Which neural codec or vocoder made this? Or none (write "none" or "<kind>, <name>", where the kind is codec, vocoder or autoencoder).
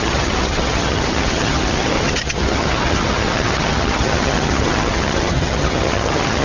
vocoder, HiFi-GAN